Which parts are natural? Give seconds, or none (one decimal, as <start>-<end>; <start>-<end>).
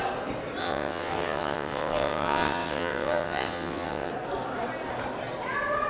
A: 0.0-0.6; 4.1-5.9